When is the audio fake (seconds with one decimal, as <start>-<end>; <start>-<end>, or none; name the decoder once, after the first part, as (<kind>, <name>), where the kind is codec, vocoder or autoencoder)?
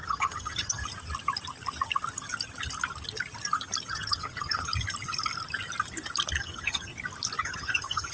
0.0-0.8 (vocoder, HiFi-GAN); 3.9-4.7; 6.4-6.9; 7.4-8.1